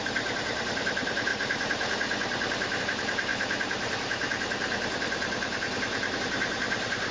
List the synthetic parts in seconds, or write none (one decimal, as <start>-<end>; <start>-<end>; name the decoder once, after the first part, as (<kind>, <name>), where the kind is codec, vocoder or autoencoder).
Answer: 0.0-1.3 (vocoder, BigVGAN v2); 2.8-7.1